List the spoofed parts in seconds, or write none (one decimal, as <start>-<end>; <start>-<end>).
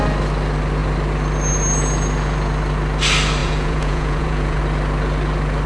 3.4-4.6